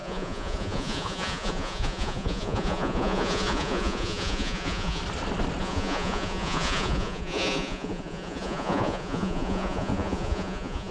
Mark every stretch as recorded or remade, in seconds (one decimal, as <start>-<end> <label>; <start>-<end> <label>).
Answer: 0.0-5.0 remade; 5.0-5.6 recorded; 5.6-10.9 remade